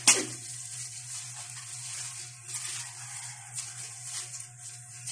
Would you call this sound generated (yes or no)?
no